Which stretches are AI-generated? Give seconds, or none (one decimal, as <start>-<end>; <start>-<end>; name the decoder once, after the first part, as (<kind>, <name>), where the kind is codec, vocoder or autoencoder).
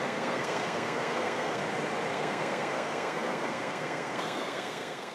0.0-1.6 (codec, SNAC); 2.1-5.1